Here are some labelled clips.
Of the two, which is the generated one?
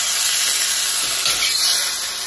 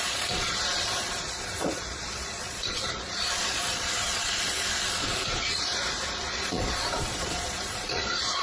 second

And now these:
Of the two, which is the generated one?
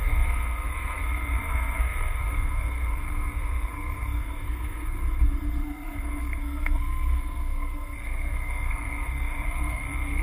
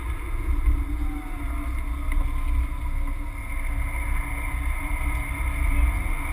first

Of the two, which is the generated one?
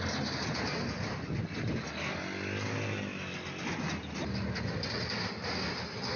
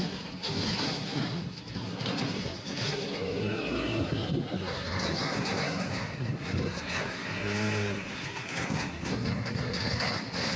second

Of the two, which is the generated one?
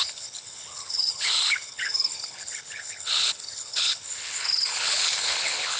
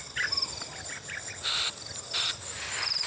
first